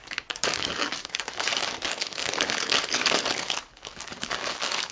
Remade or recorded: remade